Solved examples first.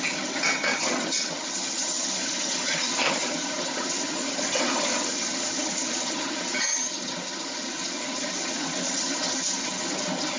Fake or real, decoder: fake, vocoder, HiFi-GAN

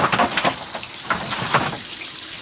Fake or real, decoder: real